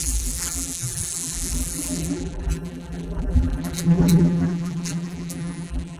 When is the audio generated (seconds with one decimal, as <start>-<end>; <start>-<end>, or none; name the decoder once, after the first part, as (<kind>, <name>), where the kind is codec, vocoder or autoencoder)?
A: 0.0-6.0 (vocoder, BigVGAN v2)